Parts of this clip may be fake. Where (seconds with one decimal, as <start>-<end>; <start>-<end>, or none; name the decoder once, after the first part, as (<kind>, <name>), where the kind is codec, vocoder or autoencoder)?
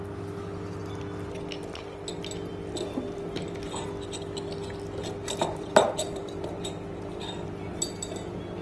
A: 5.5-7.8 (vocoder, BigVGAN v2)